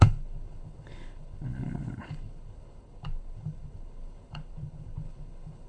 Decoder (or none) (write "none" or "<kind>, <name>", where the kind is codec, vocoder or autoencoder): codec, HILCodec